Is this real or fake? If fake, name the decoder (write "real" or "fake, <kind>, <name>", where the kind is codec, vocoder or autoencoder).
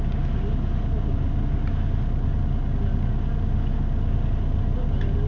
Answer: real